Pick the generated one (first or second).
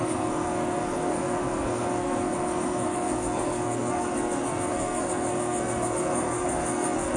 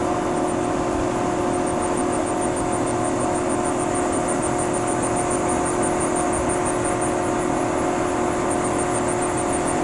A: first